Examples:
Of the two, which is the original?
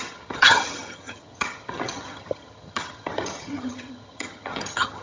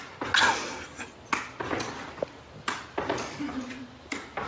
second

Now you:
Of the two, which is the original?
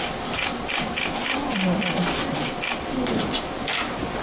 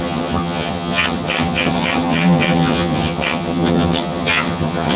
first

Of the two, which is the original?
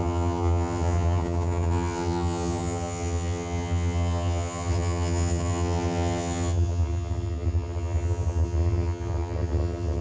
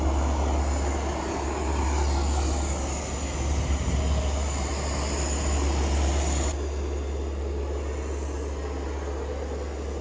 second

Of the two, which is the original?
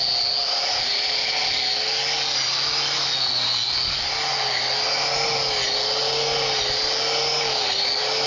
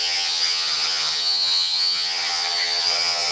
first